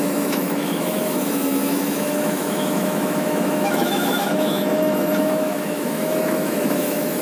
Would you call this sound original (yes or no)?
no